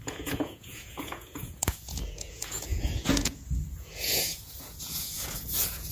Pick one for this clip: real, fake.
fake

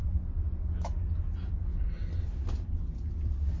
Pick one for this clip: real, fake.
real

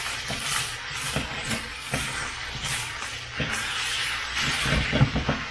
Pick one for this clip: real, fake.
real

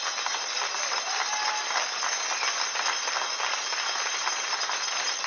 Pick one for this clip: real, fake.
real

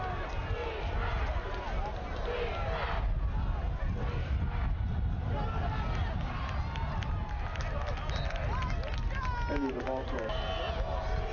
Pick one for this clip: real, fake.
real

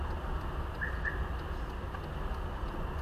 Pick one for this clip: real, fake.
real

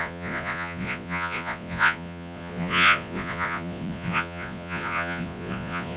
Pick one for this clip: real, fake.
fake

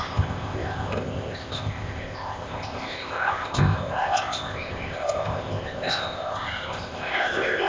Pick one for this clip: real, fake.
fake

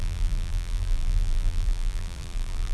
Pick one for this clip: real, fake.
fake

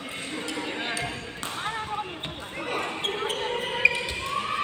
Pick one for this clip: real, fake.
real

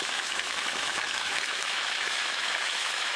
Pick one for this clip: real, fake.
fake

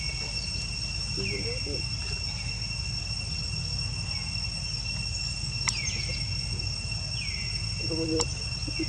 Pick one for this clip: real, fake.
real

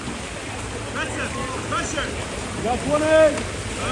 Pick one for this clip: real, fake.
real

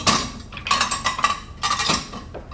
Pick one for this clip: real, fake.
real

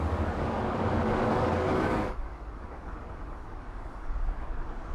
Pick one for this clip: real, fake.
fake